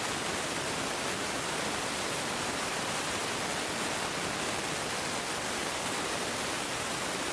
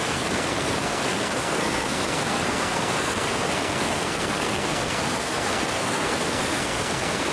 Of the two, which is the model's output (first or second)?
second